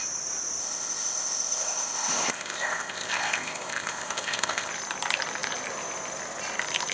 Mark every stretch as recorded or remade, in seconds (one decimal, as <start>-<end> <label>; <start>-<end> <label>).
0.0-0.6 recorded; 0.6-4.7 remade; 4.7-6.9 recorded